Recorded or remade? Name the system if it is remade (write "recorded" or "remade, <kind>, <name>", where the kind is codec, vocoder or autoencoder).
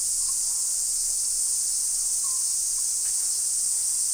recorded